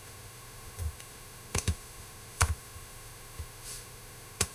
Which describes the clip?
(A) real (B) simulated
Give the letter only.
B